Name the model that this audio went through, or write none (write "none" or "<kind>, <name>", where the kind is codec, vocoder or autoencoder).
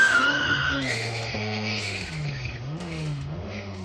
autoencoder, DAC-VAE